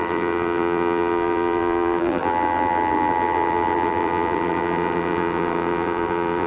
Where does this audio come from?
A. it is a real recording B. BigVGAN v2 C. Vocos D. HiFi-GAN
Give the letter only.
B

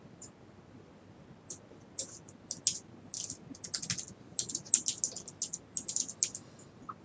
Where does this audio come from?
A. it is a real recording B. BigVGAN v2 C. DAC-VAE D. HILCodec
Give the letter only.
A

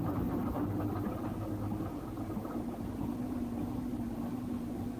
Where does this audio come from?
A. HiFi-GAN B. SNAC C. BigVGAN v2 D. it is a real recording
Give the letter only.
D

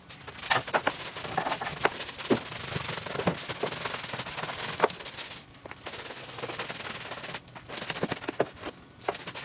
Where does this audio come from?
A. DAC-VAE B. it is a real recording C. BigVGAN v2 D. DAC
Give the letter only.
C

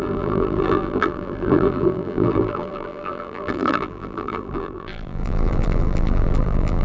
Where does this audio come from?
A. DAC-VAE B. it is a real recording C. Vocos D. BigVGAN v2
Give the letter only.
D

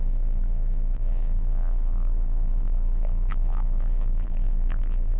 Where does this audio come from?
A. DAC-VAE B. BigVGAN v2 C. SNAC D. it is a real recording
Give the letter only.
B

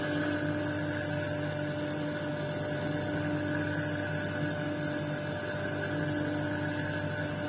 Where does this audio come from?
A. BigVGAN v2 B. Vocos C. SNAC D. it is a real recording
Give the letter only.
D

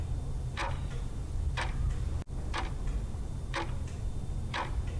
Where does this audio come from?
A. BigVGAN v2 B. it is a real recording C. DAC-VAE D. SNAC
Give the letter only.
B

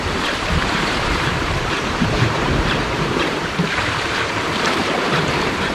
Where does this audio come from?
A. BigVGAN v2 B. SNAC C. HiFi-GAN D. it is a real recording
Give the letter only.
A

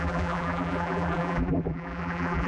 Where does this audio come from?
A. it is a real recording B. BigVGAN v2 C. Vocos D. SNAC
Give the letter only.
B